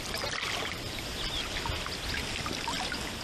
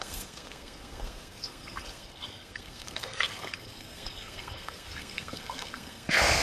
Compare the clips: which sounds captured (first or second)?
first